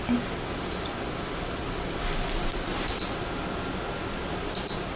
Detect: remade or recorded recorded